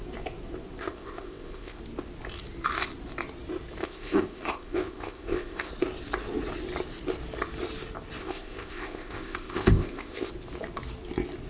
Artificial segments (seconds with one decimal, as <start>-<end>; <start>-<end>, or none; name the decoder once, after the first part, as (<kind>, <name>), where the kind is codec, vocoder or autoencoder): 0.8-1.8 (codec, ZipCodec); 3.8-5.7; 8.2-10.3